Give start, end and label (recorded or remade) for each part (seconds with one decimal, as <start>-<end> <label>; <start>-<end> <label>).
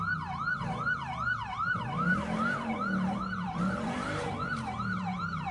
0.0-2.1 recorded; 2.1-5.5 remade